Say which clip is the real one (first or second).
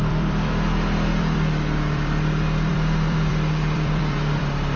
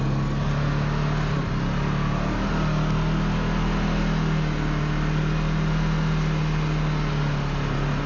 second